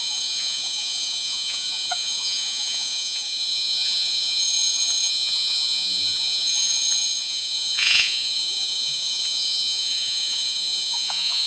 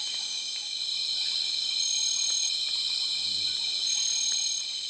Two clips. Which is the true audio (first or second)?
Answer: second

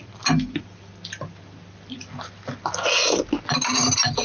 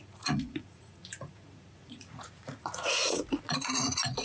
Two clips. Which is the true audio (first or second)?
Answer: first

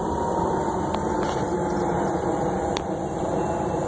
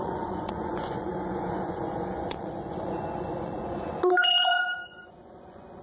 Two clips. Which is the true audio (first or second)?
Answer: first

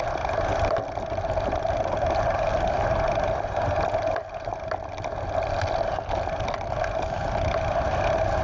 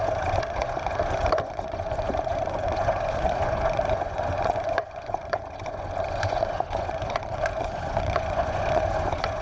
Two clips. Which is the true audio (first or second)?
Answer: first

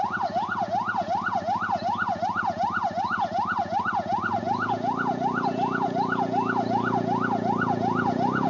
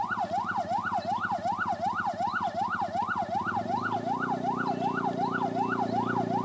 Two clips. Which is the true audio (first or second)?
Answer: second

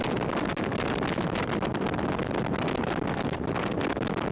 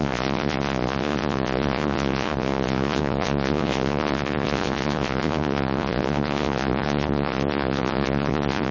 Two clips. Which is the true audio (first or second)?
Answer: first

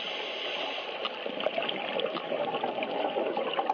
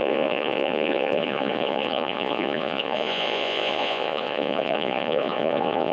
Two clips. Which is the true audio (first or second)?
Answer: first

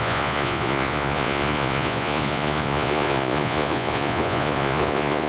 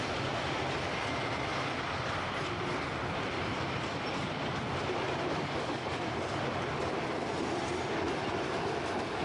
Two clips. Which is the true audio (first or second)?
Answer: second